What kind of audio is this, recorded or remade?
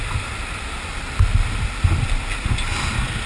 recorded